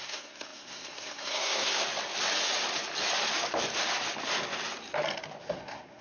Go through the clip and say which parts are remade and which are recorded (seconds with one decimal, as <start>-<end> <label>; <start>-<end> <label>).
0.0-1.8 remade; 1.8-5.4 recorded; 5.4-6.0 remade